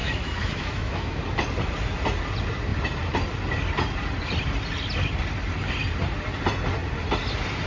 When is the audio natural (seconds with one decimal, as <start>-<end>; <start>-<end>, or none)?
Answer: 1.2-7.7

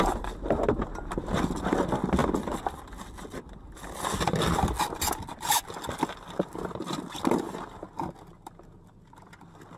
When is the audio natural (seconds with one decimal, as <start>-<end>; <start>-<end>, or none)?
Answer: 0.0-9.8

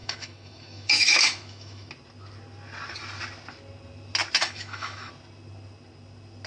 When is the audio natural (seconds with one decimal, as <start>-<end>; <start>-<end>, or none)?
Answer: 1.9-4.4; 5.1-6.5

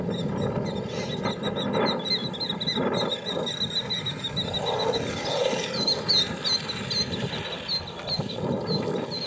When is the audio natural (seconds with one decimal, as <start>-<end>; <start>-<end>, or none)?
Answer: 0.0-9.3

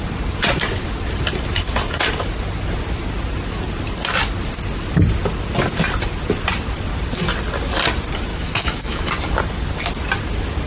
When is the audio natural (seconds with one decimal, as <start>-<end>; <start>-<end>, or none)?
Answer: 0.0-8.3; 9.1-10.7

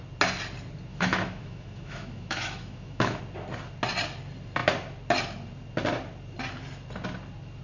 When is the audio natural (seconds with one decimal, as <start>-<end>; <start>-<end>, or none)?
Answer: 0.0-0.9; 3.2-7.6

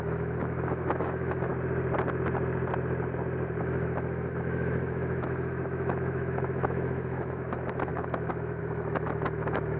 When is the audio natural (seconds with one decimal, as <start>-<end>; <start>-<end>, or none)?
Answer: 1.5-3.6

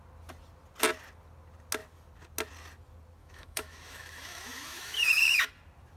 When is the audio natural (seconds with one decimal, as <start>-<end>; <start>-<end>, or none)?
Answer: 0.0-3.2; 5.5-6.0